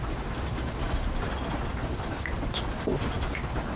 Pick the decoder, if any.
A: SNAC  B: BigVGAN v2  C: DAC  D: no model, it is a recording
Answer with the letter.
D